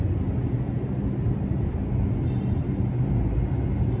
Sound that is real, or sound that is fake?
real